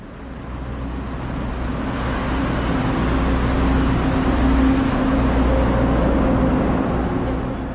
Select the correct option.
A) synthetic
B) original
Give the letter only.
B